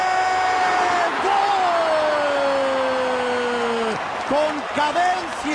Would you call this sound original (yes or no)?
yes